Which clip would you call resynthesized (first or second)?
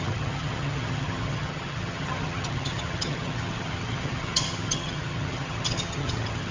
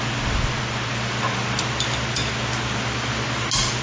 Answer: first